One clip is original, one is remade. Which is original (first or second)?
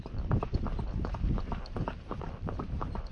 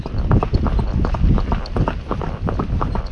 second